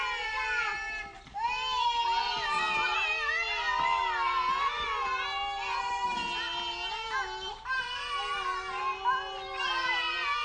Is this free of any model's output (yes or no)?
yes